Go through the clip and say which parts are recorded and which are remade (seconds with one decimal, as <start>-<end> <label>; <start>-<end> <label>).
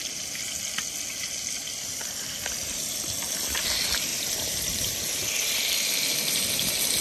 0.0-4.1 recorded; 4.1-5.2 remade; 5.2-7.0 recorded